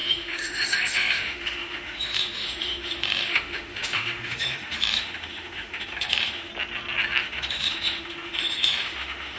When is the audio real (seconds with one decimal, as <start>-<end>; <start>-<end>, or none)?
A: 6.5-7.2